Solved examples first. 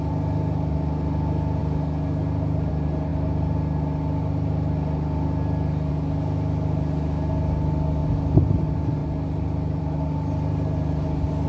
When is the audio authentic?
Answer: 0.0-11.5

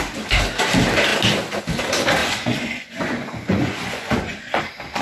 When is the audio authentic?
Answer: 0.0-2.2; 4.6-5.0

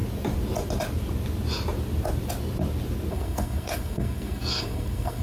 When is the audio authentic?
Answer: 0.0-3.1

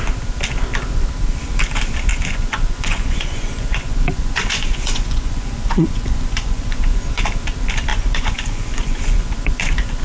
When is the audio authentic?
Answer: 0.0-2.1; 7.2-7.9

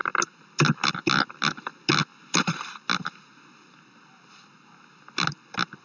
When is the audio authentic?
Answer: 0.9-2.1

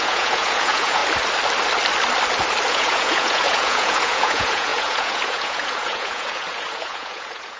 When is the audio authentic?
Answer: 1.0-2.7